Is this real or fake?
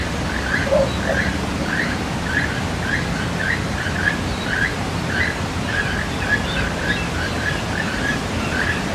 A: real